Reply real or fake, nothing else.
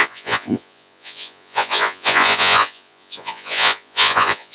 fake